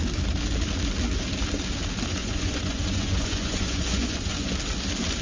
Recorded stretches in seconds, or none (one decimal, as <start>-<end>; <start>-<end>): 0.0-2.2; 4.5-5.2